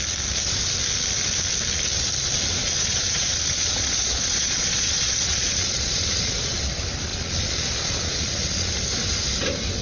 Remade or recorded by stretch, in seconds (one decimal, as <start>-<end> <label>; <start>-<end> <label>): 0.0-2.6 recorded; 2.6-6.6 remade; 6.6-7.1 recorded; 7.1-8.7 remade; 8.7-9.8 recorded